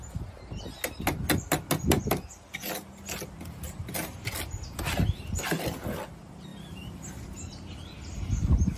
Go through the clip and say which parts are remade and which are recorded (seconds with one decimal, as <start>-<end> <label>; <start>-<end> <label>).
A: 0.0-6.5 recorded; 6.5-7.1 remade; 7.1-8.8 recorded